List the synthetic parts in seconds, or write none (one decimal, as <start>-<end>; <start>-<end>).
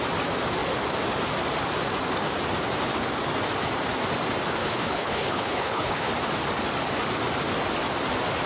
4.6-6.1